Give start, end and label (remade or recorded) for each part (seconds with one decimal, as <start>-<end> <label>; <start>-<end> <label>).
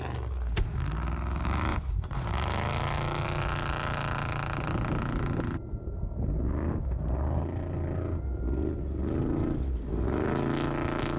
0.0-1.7 recorded; 1.7-2.3 remade; 2.3-11.2 recorded